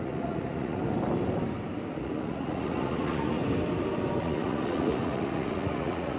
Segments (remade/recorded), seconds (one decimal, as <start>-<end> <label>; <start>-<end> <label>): 0.0-0.8 remade; 0.8-1.9 recorded; 1.9-3.4 remade; 3.4-4.2 recorded; 4.2-6.2 remade